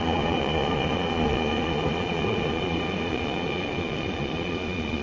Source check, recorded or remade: remade